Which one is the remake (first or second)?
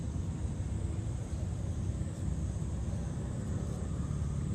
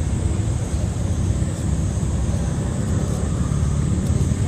second